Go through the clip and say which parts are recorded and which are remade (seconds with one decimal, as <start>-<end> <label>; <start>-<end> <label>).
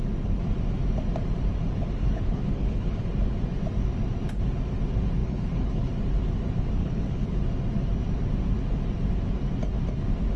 0.0-2.0 recorded; 2.0-3.0 remade; 3.0-5.2 recorded; 5.2-5.9 remade; 5.9-6.8 recorded; 6.8-7.4 remade; 7.4-10.4 recorded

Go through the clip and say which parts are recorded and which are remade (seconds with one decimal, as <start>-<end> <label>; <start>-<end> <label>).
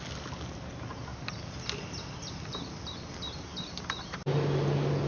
0.0-5.1 recorded